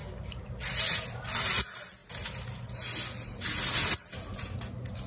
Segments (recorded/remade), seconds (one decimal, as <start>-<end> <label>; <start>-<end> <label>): 0.0-5.1 recorded